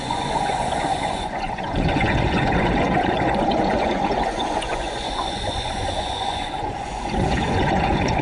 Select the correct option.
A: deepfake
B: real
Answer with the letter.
A